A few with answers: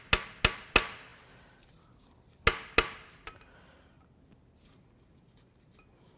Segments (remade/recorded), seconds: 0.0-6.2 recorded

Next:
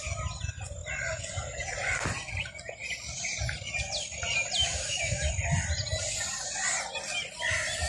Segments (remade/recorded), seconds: 0.0-4.6 recorded; 4.6-5.3 remade; 5.3-7.9 recorded

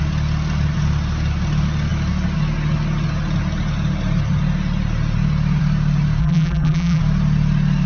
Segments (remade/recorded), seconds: 0.0-6.2 recorded; 6.2-7.0 remade; 7.0-7.9 recorded

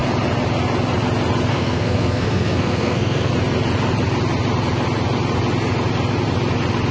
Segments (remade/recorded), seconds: 0.0-1.5 recorded; 1.5-3.3 remade; 3.3-6.9 recorded

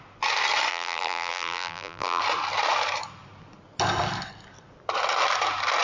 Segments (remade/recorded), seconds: 0.0-0.7 recorded; 0.7-2.2 remade; 2.2-5.8 recorded

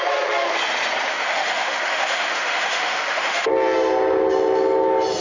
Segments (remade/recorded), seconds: 0.0-1.1 recorded; 1.1-3.5 remade; 3.5-5.2 recorded

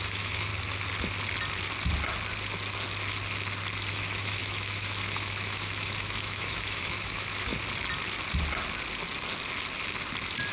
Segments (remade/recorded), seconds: 0.0-0.5 remade; 0.5-3.9 recorded; 3.9-7.5 remade; 7.5-10.5 recorded

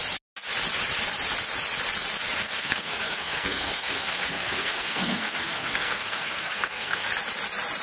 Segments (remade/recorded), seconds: 0.0-2.4 recorded; 2.4-7.1 remade; 7.1-7.8 recorded